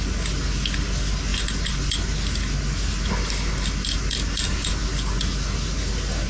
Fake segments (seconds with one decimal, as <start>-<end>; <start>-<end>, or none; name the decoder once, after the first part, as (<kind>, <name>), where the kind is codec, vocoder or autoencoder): none